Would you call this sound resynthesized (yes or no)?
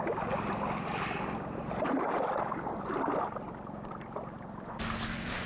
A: no